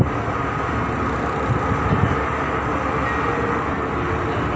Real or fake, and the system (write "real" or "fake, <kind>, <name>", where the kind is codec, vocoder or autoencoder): real